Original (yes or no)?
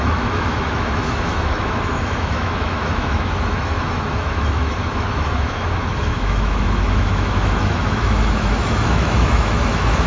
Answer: no